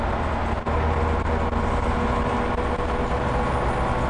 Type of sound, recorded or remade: recorded